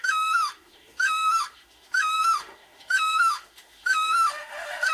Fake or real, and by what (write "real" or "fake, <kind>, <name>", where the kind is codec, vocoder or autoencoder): fake, autoencoder, DAC-VAE